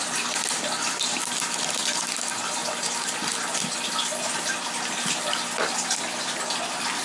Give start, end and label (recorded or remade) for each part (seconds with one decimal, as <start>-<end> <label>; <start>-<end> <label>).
0.0-7.0 recorded